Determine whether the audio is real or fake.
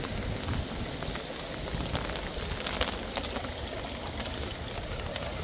real